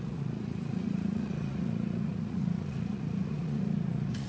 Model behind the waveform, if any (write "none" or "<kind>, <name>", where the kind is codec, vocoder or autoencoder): vocoder, Vocos